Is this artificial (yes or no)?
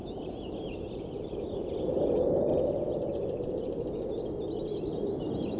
no